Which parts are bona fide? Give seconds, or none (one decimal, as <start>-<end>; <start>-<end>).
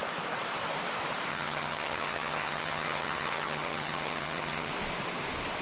0.0-1.3; 4.7-5.6